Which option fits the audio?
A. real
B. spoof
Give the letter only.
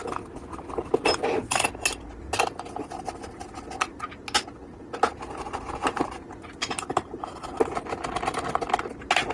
A